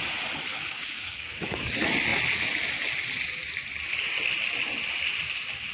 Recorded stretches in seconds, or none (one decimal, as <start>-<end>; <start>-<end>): 0.0-0.5; 1.7-5.7